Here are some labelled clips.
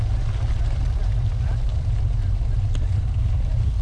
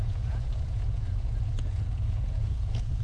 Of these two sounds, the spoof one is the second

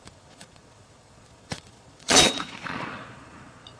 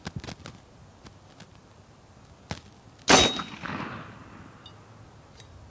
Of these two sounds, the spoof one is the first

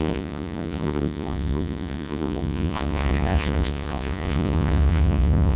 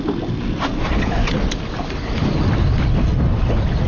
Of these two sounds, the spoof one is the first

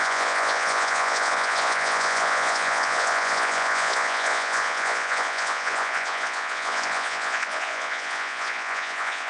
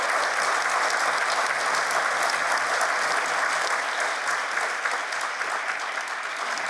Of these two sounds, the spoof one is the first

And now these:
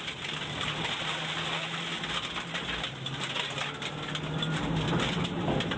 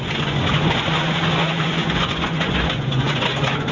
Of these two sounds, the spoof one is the second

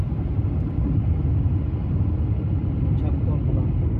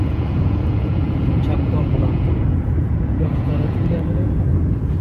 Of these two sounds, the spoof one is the second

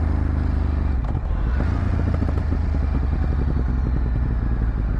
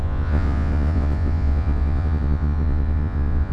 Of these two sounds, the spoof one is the second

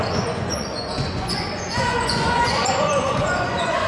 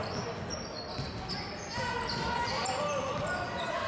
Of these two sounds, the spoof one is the first